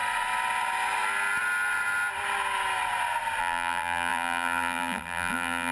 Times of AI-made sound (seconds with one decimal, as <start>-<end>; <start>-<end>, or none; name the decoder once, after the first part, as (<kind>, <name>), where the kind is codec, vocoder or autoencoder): 3.4-5.7 (vocoder, BigVGAN v2)